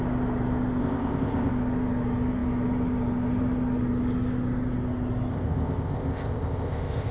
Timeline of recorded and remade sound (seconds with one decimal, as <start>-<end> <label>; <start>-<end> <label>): 0.0-0.8 recorded; 0.8-1.5 remade; 1.5-5.3 recorded; 5.3-7.1 remade